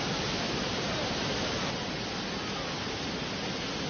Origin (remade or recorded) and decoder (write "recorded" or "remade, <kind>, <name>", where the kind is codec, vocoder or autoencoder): recorded